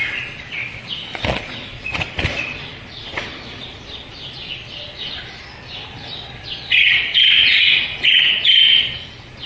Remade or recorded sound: remade